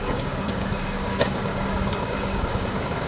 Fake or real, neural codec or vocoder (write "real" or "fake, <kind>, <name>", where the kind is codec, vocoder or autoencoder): fake, codec, DAC